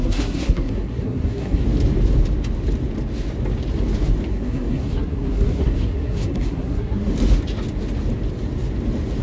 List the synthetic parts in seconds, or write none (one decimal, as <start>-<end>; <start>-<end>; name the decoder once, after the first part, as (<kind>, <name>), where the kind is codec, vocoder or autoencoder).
0.0-1.6 (codec, SNAC); 4.3-7.1